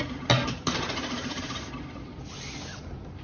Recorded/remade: recorded